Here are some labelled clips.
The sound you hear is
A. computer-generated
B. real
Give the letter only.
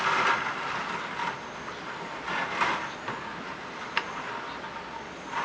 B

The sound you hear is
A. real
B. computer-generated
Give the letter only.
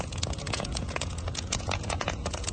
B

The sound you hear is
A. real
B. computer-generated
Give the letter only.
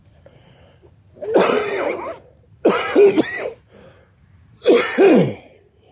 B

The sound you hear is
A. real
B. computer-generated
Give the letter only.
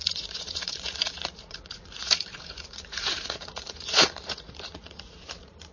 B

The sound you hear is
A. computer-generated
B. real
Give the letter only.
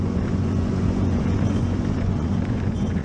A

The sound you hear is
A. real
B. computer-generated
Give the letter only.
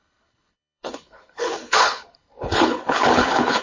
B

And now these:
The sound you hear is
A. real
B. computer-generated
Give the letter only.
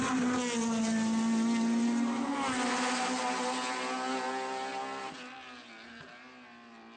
A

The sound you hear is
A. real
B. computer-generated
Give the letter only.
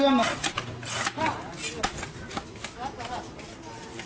A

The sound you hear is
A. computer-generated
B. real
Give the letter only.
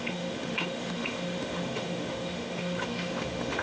A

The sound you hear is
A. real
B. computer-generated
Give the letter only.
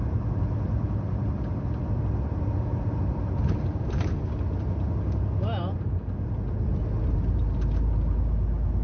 A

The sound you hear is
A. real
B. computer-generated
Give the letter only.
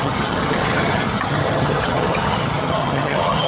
B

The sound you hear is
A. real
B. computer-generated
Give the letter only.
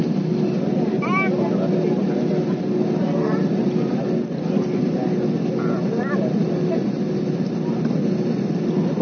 A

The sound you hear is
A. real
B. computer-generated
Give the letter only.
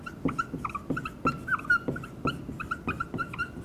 A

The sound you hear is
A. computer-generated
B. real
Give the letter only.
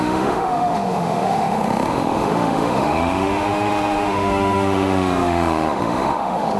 A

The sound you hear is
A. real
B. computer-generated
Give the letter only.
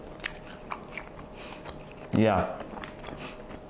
A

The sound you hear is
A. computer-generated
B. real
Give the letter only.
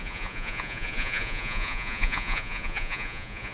A